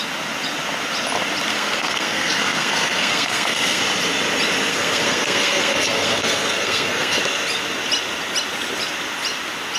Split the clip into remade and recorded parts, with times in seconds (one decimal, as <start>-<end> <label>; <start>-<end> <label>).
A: 0.0-1.5 recorded; 1.5-3.8 remade; 3.8-4.7 recorded; 4.7-7.2 remade; 7.2-9.8 recorded